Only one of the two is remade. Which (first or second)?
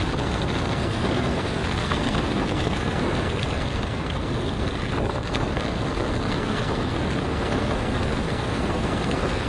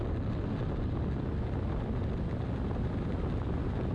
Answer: first